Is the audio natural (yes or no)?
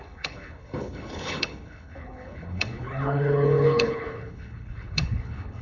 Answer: no